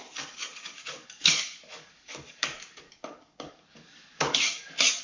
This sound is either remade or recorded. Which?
remade